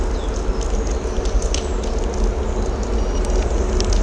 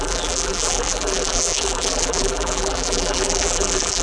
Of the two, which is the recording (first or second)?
first